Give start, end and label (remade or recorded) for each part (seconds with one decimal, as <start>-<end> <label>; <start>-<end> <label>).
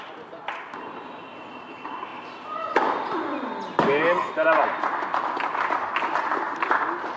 0.0-7.2 recorded